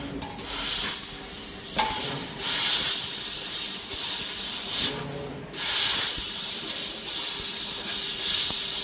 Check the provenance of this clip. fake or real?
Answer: real